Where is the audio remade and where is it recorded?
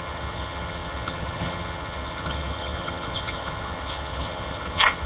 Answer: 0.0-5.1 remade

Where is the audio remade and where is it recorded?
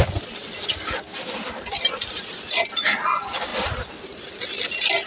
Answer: 0.0-5.1 recorded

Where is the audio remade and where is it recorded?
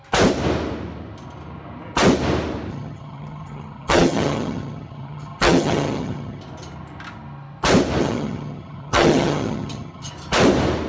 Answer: 0.0-2.7 recorded; 2.7-6.4 remade; 6.4-8.0 recorded; 8.0-10.1 remade; 10.1-10.9 recorded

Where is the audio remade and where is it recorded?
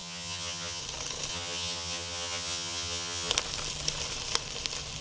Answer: 0.0-0.8 remade; 0.8-1.3 recorded; 1.3-3.3 remade; 3.3-5.0 recorded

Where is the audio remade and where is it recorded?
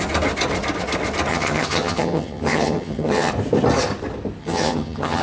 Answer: 0.0-1.3 recorded; 1.3-3.3 remade; 3.3-4.4 recorded; 4.4-5.2 remade